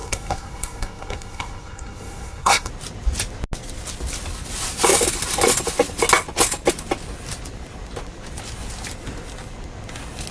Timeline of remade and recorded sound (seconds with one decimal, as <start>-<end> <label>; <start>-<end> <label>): 0.0-2.7 remade; 2.7-10.3 recorded